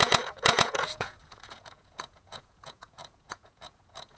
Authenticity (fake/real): fake